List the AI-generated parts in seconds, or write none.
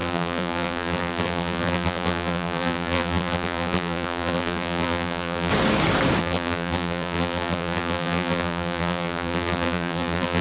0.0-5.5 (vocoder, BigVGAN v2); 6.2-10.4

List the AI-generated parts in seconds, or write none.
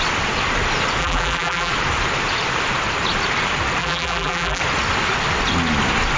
1.0-1.7 (vocoder, BigVGAN v2); 3.8-4.6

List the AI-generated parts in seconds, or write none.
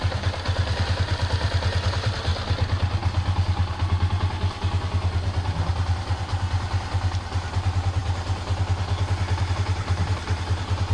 0.0-2.3 (vocoder, BigVGAN v2); 5.7-6.3; 7.2-8.0; 9.5-10.9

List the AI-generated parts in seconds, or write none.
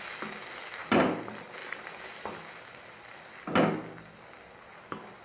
1.6-3.3 (vocoder, BigVGAN v2)